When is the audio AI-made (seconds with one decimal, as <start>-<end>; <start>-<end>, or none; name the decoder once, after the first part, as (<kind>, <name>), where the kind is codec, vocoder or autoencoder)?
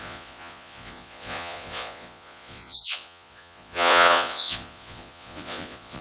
0.0-6.0 (vocoder, Vocos)